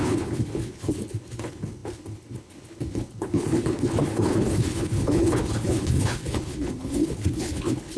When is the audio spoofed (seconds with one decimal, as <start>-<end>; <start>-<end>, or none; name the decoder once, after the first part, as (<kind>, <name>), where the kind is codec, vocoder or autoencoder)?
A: 0.0-8.0 (codec, HILCodec)